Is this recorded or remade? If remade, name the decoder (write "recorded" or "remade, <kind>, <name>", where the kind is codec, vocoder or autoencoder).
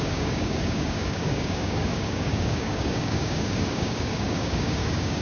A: remade, codec, DAC